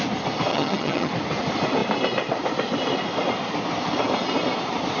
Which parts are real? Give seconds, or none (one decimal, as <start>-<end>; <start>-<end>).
0.0-0.5; 1.1-5.0